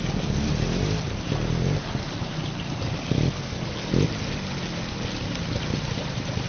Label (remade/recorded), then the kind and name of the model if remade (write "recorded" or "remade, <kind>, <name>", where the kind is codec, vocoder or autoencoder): recorded